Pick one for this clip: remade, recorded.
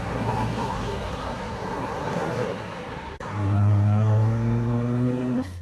remade